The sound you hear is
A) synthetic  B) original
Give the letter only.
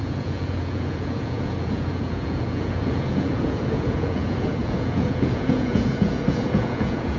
A